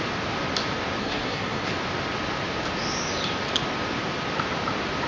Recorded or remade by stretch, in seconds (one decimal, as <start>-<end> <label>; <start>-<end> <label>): 0.0-1.0 recorded; 1.0-1.7 remade; 1.7-5.1 recorded